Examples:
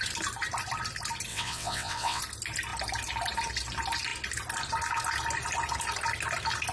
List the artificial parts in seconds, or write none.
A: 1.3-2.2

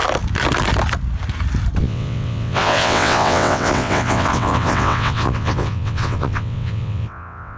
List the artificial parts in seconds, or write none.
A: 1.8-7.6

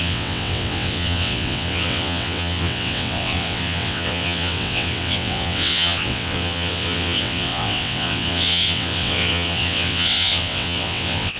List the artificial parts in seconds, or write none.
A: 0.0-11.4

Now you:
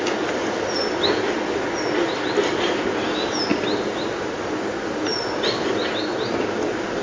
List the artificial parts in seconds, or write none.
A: none

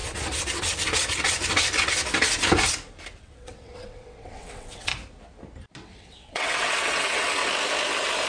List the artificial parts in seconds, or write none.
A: 3.2-4.9; 5.8-7.4